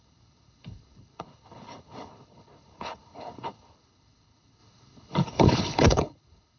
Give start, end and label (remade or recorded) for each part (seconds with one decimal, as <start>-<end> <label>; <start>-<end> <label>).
0.0-6.6 remade